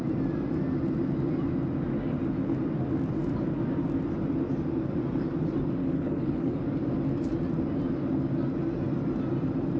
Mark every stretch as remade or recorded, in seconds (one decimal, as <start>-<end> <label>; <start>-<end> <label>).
0.0-5.8 recorded; 5.8-6.6 remade; 6.6-9.8 recorded